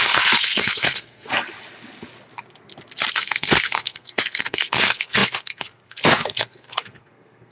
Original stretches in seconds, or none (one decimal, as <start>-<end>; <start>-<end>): 1.3-3.1